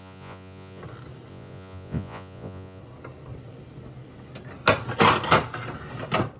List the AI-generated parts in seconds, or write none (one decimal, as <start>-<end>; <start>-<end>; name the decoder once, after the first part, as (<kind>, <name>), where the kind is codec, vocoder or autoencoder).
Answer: 0.0-0.8 (vocoder, Vocos); 1.3-2.8